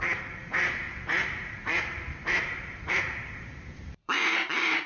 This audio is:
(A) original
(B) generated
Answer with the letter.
B